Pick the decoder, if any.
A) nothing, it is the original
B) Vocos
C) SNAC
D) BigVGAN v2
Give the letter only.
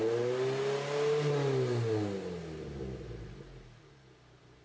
A